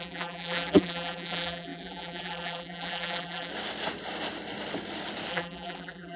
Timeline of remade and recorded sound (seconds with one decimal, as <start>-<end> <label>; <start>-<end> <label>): 0.0-3.5 remade; 3.5-5.3 recorded; 5.3-6.2 remade